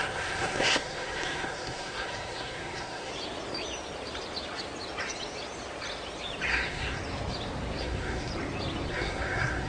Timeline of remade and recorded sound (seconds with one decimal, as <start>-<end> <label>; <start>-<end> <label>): 0.0-3.1 remade; 3.1-6.5 recorded; 6.5-7.0 remade; 7.0-7.8 recorded; 7.8-8.3 remade; 8.3-8.9 recorded; 8.9-9.7 remade